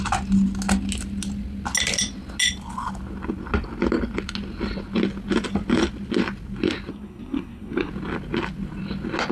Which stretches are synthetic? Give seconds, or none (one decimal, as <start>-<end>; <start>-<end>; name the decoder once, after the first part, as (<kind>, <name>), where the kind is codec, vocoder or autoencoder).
6.9-7.9 (codec, SNAC)